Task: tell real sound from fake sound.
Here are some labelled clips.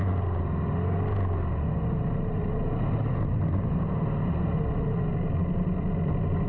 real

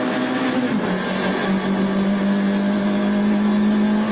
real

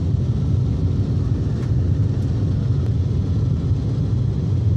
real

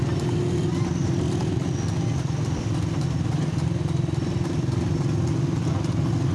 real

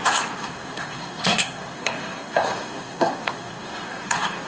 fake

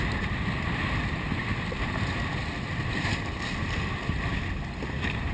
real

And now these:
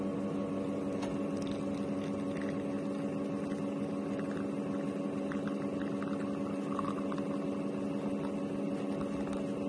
real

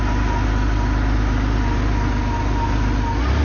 real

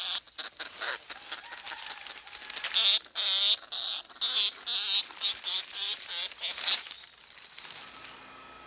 real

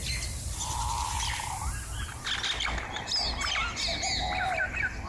real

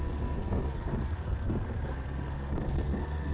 fake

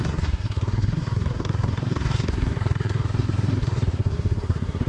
fake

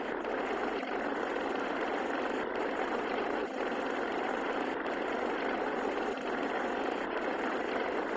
real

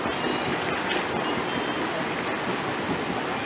real